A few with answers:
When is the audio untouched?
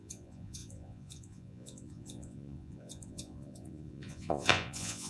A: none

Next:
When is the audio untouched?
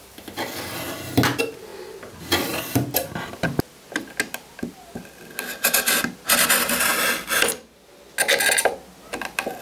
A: 0.0-9.6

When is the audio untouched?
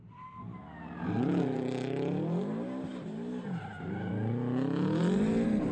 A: 0.0-5.7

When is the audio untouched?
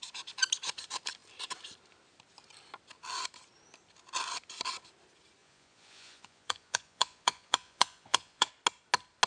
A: 0.0-5.4; 8.5-9.3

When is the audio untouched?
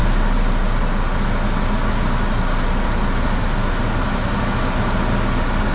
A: 0.0-5.7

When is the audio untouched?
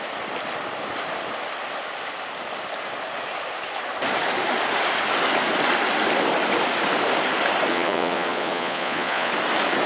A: 0.0-7.7; 9.3-9.9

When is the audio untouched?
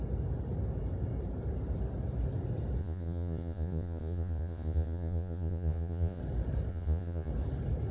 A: 0.0-2.8; 6.2-6.7; 7.3-7.9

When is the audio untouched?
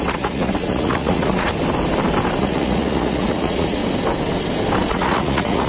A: 1.5-2.4; 3.8-4.9